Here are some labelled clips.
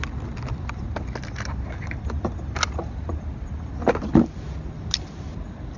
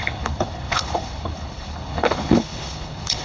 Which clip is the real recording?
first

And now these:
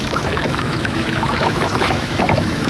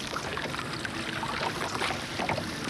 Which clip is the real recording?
second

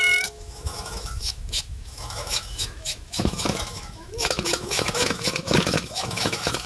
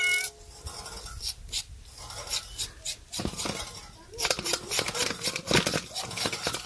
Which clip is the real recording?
second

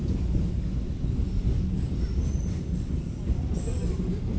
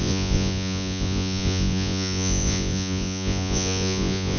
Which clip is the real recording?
first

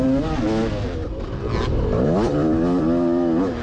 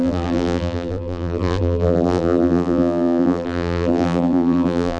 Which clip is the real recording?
first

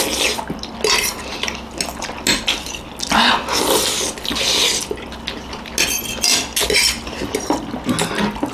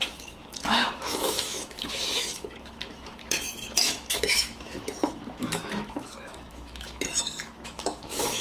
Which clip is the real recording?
first